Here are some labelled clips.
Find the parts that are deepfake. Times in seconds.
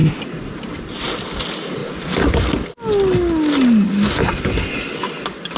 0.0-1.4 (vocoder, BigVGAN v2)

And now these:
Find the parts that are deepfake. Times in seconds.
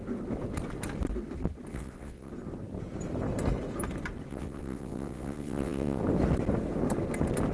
1.7-2.3 (vocoder, WaveNeXt); 4.3-6.0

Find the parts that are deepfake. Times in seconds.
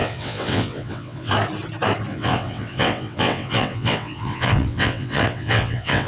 0.0-1.3 (vocoder, WaveNeXt); 2.1-6.1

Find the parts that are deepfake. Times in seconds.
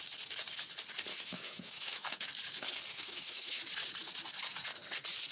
1.1-2.3 (autoencoder, DAC-VAE); 2.9-3.6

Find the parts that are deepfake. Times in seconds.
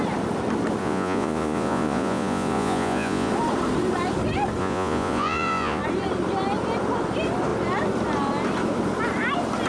0.8-3.3 (vocoder, Vocos); 4.6-5.8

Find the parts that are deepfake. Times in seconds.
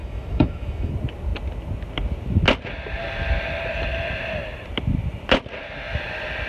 0.0-0.9 (autoencoder, DAC-VAE)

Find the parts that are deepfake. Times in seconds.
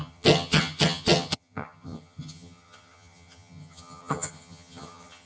0.0-5.3 (vocoder, HiFi-GAN)